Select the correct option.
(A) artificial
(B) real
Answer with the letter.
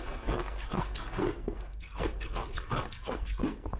A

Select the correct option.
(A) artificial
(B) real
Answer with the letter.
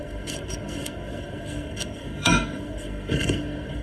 A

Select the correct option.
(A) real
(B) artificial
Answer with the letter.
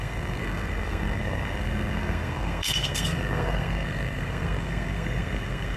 B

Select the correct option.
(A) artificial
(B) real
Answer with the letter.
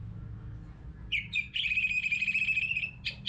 B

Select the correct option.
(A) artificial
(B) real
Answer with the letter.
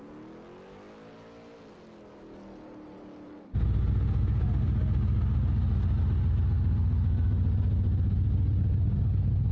B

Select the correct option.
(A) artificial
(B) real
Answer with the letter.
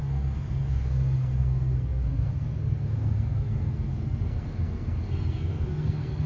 A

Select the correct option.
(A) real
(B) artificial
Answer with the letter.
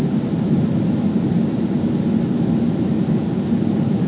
A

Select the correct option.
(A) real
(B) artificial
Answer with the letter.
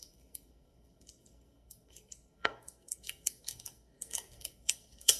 B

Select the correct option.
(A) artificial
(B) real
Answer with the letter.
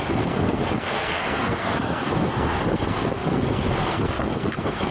A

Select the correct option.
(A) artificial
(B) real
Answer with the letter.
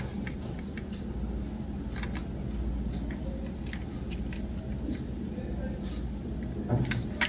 B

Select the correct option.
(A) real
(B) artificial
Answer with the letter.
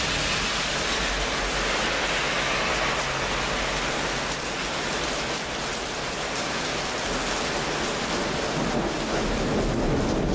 A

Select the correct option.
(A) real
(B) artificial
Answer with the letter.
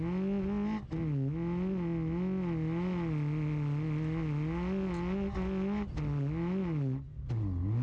A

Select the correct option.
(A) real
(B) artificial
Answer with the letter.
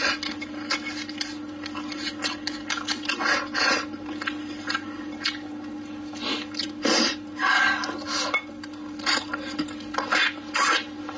A